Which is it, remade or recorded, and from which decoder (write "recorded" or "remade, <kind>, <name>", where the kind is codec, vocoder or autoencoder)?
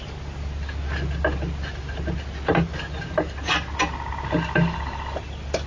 recorded